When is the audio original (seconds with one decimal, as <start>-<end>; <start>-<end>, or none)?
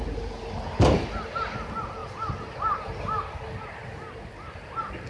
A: 0.0-5.1